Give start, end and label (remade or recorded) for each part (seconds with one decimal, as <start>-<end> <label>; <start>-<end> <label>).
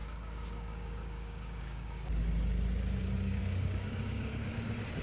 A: 0.0-2.1 remade; 2.1-3.4 recorded; 3.4-4.5 remade; 4.5-5.0 recorded